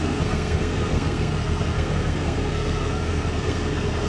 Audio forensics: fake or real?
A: fake